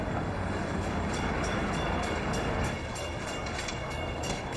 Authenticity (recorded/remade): remade